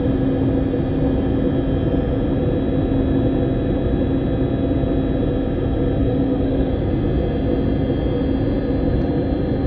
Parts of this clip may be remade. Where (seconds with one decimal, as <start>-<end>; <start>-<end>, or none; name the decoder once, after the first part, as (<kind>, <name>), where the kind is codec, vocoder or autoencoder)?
6.0-6.7 (codec, SNAC)